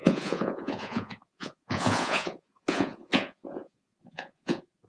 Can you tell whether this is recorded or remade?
remade